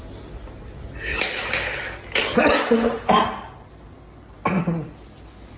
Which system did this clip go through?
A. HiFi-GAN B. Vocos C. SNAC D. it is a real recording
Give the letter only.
D